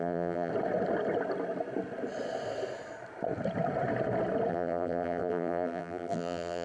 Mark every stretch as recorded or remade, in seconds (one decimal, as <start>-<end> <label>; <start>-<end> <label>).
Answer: 0.0-0.5 remade; 0.5-4.5 recorded; 4.5-6.6 remade